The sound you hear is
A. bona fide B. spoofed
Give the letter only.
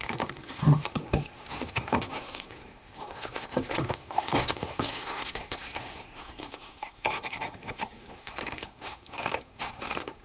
B